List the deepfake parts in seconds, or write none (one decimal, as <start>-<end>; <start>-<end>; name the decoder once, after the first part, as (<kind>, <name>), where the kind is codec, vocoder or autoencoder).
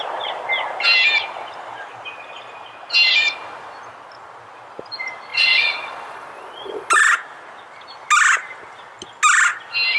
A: 5.3-6.9 (vocoder, Vocos)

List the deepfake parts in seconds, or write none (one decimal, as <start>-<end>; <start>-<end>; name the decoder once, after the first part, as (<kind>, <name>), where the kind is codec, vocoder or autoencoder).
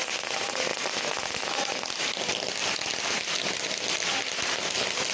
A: none